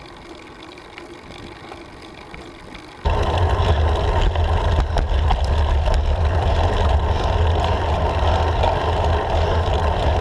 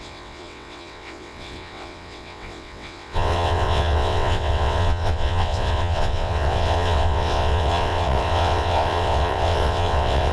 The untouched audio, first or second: first